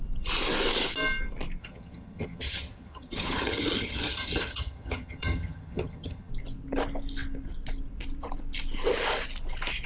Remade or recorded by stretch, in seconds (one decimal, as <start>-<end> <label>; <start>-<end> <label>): 0.0-1.6 recorded; 1.6-6.3 remade; 6.3-9.9 recorded